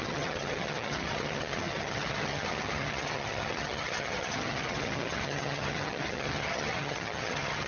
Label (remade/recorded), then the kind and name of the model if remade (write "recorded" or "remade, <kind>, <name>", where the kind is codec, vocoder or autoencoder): remade, vocoder, HiFi-GAN